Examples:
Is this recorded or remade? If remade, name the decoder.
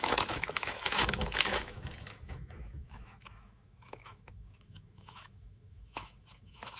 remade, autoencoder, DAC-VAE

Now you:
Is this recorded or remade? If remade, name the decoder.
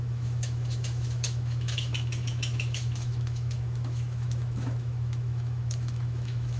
remade, autoencoder, DAC-VAE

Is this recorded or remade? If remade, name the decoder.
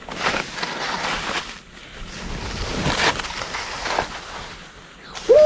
recorded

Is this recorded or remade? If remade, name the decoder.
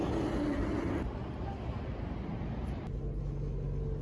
recorded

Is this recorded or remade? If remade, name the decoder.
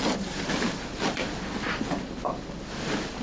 recorded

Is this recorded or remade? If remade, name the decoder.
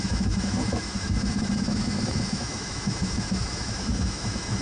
remade, autoencoder, DAC-VAE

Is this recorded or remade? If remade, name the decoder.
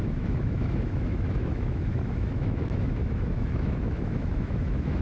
remade, autoencoder, DAC-VAE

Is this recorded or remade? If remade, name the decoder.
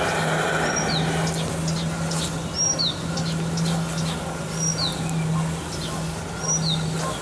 recorded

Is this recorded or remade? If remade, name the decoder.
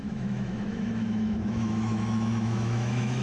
remade, autoencoder, DAC-VAE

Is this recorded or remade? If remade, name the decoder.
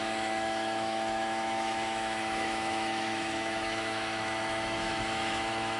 remade, autoencoder, DAC-VAE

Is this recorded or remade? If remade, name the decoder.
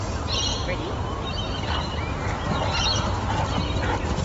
recorded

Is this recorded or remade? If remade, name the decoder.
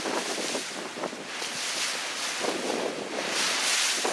recorded